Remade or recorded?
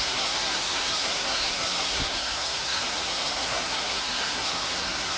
remade